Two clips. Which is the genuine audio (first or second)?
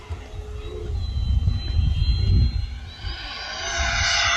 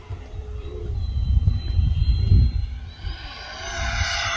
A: first